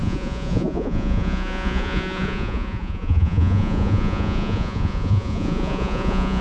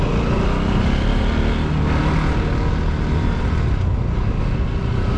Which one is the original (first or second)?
second